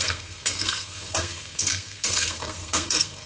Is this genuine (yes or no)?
no